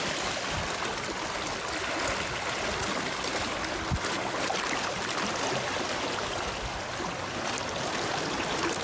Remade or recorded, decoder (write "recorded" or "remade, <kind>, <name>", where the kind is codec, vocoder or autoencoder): recorded